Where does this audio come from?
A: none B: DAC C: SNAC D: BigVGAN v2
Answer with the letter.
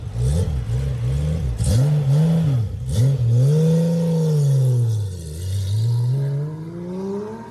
A